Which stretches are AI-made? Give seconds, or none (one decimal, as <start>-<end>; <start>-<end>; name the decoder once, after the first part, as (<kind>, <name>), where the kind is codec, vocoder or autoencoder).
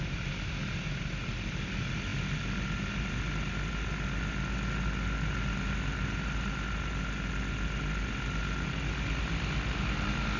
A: none